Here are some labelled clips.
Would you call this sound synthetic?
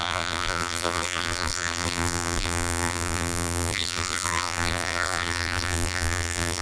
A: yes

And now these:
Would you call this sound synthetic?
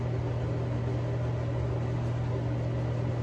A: no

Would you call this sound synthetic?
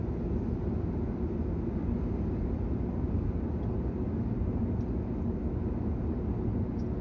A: no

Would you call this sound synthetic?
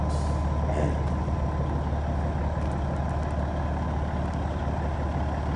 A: no